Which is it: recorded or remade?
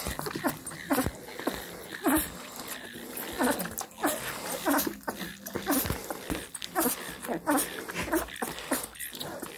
recorded